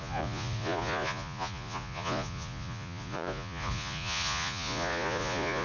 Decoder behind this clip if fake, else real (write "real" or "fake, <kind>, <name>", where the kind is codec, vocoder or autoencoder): fake, vocoder, Vocos